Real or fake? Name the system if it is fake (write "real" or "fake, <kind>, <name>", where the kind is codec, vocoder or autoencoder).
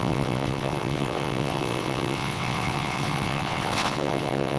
fake, vocoder, WaveNeXt